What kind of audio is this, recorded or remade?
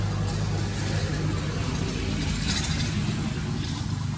recorded